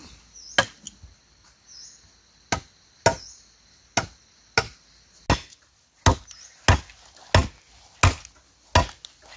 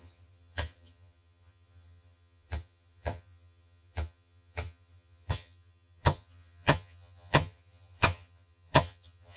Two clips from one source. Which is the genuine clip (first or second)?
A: first